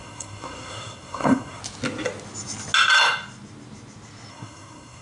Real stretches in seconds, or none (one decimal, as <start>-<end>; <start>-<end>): 1.6-4.3